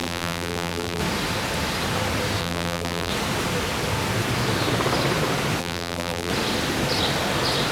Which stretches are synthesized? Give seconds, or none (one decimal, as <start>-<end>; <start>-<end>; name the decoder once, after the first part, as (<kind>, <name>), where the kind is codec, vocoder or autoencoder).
0.0-1.0 (vocoder, BigVGAN v2); 2.4-3.1; 5.6-6.3